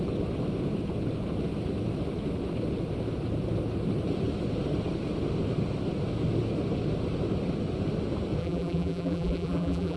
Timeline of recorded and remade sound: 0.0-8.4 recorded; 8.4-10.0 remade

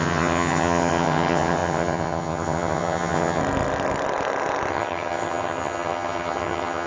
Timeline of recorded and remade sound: 0.0-3.4 remade; 3.4-4.7 recorded; 4.7-6.9 remade

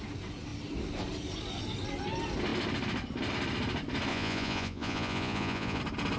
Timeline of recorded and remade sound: 0.0-4.1 recorded; 4.1-5.8 remade; 5.8-6.2 recorded